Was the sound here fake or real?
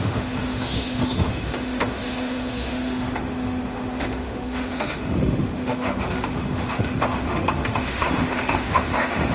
fake